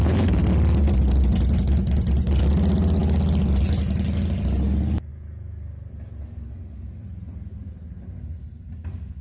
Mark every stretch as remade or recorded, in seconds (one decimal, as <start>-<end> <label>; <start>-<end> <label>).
0.0-9.2 recorded